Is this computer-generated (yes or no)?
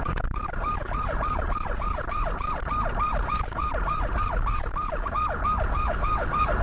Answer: yes